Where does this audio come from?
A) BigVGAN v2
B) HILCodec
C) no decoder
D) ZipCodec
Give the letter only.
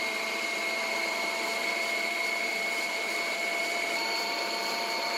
A